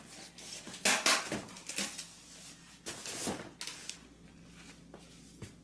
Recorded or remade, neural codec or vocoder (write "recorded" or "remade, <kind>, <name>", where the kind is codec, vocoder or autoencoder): recorded